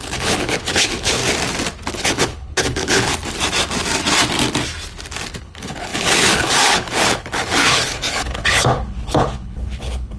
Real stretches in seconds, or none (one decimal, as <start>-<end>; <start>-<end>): 1.2-1.9; 3.1-5.4

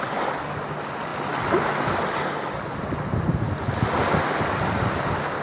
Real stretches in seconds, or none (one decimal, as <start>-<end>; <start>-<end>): 0.0-5.4